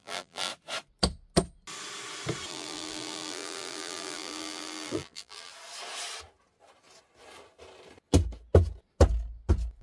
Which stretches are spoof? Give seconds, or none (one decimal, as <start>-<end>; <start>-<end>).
0.0-0.5; 2.5-5.5